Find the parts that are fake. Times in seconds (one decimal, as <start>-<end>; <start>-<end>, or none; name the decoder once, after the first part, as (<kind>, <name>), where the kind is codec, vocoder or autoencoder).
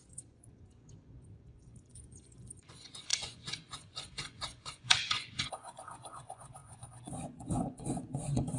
0.0-8.6 (vocoder, Vocos)